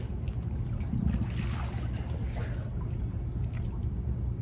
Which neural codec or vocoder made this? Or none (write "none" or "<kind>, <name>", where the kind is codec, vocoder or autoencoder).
none